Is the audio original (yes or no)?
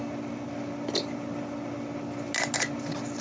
yes